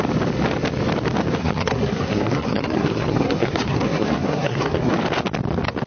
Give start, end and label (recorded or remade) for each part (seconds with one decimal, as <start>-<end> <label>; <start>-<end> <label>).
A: 0.0-1.4 recorded; 1.4-4.9 remade; 4.9-5.9 recorded